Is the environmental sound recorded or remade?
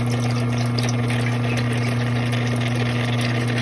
recorded